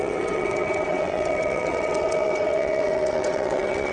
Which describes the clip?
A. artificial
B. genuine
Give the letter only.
A